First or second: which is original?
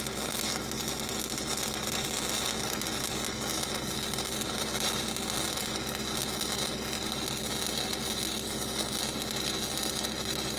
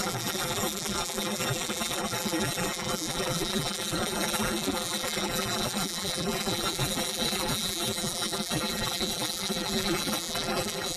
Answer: first